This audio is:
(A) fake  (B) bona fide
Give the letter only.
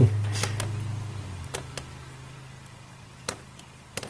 B